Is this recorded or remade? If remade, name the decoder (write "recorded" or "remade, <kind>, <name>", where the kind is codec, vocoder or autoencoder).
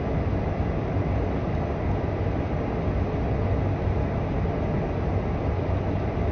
recorded